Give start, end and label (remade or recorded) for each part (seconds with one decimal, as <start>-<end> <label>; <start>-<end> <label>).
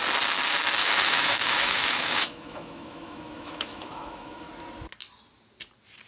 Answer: 0.0-0.8 recorded; 0.8-4.5 remade; 4.5-6.1 recorded